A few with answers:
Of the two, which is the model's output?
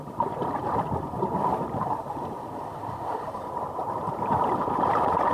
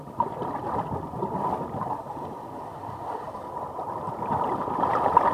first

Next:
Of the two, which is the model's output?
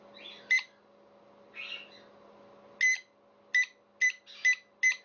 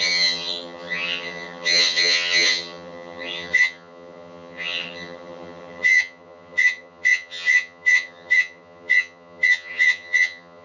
second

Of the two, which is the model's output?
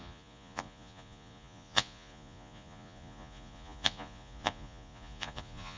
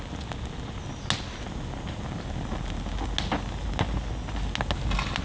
first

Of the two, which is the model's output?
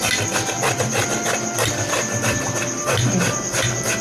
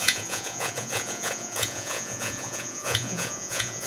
second